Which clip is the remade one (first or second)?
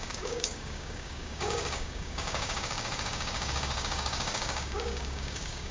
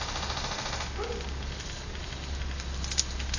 first